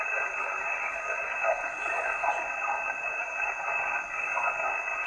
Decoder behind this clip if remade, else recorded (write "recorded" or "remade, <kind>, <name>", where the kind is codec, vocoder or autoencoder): recorded